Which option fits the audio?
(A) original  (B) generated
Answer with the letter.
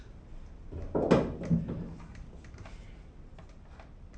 A